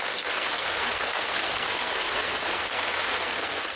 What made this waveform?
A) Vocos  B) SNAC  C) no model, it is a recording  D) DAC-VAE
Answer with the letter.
B